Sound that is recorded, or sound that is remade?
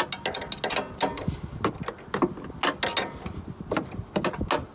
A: recorded